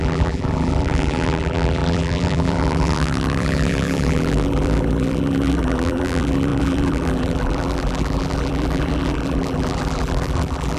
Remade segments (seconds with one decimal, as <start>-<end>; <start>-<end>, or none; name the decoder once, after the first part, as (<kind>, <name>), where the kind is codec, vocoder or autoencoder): 0.0-10.8 (vocoder, BigVGAN v2)